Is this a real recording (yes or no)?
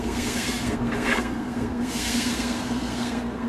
no